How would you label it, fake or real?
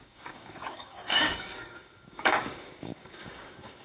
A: fake